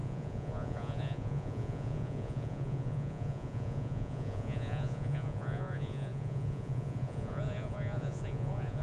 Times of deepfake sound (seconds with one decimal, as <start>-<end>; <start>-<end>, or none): 0.0-8.8